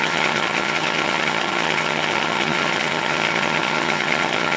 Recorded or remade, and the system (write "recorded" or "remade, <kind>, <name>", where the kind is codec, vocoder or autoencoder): remade, vocoder, HiFi-GAN